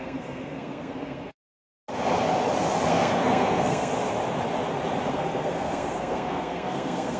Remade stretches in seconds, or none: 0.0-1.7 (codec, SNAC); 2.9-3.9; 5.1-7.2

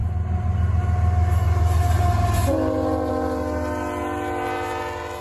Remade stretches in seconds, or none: none

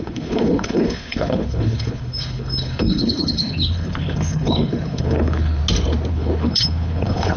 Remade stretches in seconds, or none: 0.0-5.6 (codec, HILCodec); 6.1-7.4

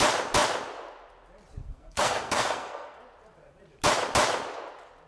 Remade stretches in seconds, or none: 1.6-3.0 (codec, SNAC)